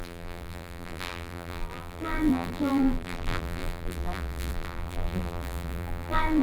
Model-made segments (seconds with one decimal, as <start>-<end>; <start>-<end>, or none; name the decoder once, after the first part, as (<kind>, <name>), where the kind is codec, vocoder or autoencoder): 0.0-6.4 (vocoder, BigVGAN v2)